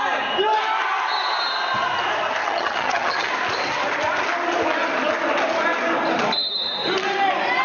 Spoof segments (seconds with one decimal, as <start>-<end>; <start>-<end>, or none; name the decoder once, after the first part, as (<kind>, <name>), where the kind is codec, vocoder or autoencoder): 2.4-3.3 (vocoder, HiFi-GAN)